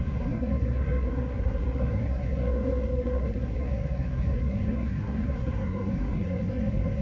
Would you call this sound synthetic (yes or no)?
yes